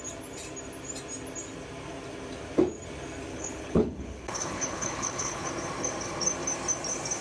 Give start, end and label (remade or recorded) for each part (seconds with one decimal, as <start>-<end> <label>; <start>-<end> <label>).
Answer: 0.0-3.3 recorded; 3.3-5.5 remade; 5.5-7.2 recorded